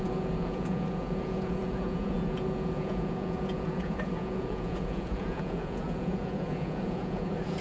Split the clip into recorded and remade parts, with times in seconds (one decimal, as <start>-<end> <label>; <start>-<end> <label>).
0.0-7.6 remade